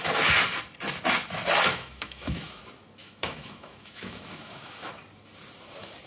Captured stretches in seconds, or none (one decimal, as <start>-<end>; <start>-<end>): 0.0-1.7; 2.6-3.0; 4.9-6.1